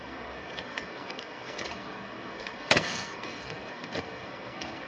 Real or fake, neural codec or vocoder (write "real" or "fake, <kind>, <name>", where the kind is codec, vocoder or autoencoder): fake, codec, SNAC